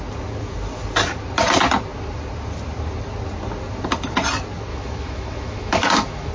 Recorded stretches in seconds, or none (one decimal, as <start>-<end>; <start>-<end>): 0.0-4.7

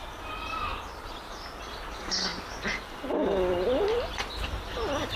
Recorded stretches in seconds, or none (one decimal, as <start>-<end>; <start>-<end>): 0.0-5.2

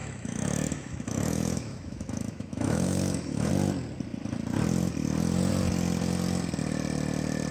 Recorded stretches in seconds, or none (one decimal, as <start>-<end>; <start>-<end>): 3.5-7.5

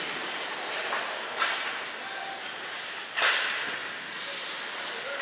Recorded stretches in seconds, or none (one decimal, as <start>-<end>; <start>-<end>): 0.0-5.2

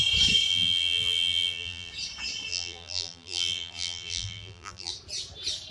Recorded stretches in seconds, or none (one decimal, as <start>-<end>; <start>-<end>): 0.0-0.5; 1.9-2.5; 4.9-5.7

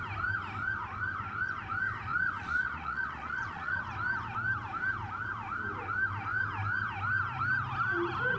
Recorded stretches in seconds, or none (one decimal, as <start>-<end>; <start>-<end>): 0.0-2.1; 3.8-8.4

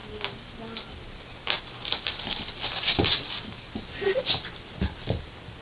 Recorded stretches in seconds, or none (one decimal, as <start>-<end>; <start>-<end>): 0.0-5.6